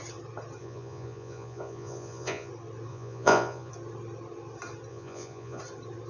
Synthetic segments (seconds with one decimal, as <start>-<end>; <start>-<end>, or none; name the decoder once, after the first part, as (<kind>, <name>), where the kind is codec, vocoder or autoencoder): 0.6-2.5 (vocoder, Vocos); 2.9-3.7; 4.9-5.6